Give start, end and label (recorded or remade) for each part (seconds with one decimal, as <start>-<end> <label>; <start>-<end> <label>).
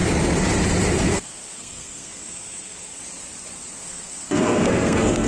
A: 0.0-1.1 recorded; 1.1-3.0 remade; 3.0-3.8 recorded; 3.8-5.3 remade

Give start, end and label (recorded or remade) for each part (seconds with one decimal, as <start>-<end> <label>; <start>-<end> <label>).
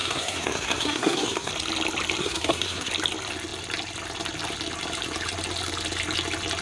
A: 0.0-1.5 remade; 1.5-2.2 recorded; 2.2-2.9 remade; 2.9-6.6 recorded